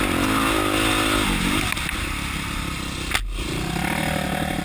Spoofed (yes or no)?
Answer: no